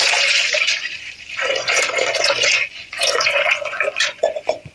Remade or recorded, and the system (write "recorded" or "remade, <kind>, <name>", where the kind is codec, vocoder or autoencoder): remade, vocoder, Vocos